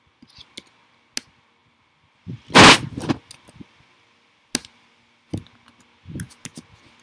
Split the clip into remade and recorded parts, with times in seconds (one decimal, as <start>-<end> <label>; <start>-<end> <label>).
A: 0.0-7.0 recorded